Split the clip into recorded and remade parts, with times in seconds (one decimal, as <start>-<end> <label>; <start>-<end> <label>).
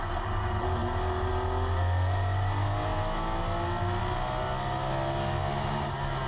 0.0-6.3 recorded